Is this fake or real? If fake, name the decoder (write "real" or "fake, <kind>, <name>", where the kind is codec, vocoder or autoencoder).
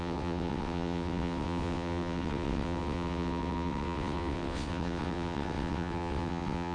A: fake, vocoder, WaveNeXt